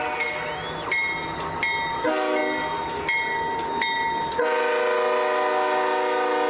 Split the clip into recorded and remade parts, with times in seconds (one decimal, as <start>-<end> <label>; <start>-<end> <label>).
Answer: 0.0-6.5 recorded